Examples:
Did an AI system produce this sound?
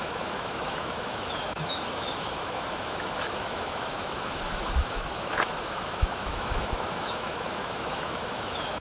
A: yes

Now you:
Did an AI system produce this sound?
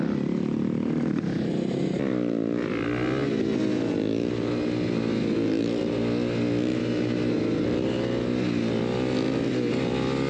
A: no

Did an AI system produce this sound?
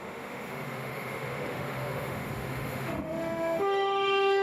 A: yes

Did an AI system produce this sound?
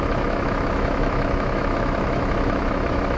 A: yes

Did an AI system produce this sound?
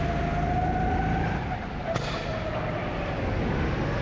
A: no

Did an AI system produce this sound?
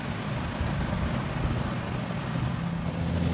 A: no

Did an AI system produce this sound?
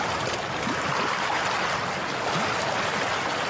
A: no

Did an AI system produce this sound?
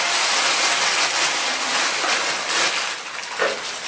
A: no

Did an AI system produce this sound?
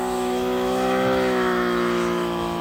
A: yes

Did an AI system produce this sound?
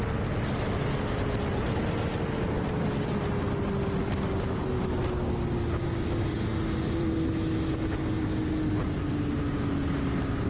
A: no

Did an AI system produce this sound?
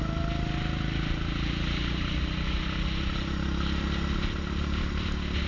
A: no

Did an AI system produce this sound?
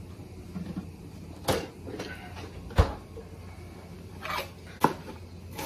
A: no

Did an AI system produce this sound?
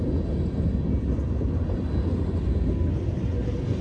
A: no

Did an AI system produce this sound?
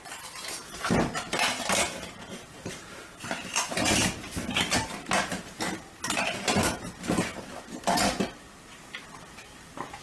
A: no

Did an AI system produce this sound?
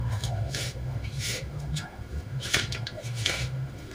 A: yes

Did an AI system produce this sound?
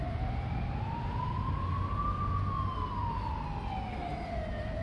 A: no